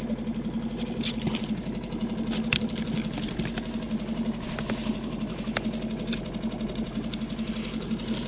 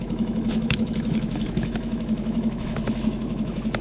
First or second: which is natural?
first